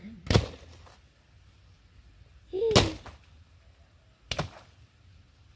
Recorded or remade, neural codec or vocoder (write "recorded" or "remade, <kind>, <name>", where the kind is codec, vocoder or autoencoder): recorded